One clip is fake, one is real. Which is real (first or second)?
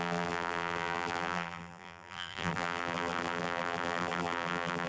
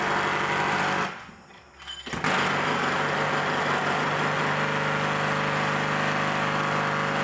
second